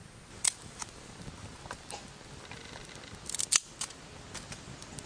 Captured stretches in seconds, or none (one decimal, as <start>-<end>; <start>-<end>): 0.0-5.1